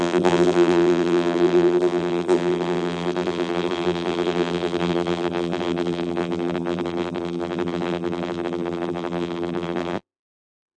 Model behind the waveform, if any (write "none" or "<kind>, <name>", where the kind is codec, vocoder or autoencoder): vocoder, BigVGAN v2